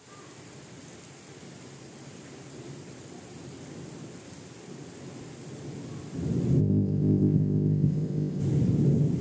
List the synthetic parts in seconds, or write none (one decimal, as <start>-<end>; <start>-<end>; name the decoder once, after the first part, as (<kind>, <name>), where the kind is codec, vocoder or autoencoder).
6.6-8.4 (codec, ZipCodec)